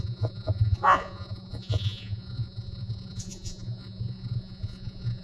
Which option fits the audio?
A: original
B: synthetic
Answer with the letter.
B